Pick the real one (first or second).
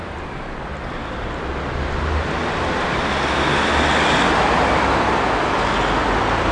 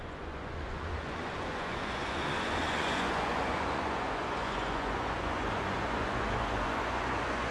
first